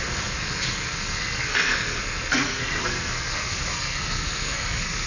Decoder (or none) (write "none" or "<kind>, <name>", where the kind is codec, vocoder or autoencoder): codec, SNAC